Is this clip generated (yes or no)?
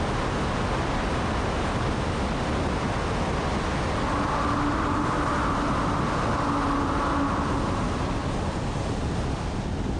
no